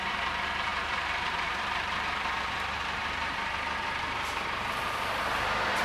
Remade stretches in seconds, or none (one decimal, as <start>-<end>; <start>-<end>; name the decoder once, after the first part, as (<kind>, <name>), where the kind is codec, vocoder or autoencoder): 0.0-4.3 (vocoder, BigVGAN v2)